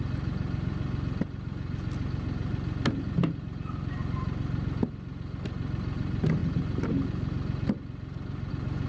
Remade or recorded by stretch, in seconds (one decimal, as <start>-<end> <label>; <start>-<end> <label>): 0.0-8.9 recorded